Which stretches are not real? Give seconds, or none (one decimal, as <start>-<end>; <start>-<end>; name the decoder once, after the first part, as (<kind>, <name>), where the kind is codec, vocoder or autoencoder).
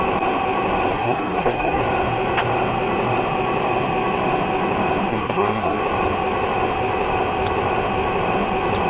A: 0.9-1.8 (codec, SNAC); 5.1-5.8